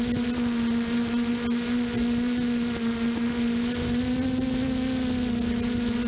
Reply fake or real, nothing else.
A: real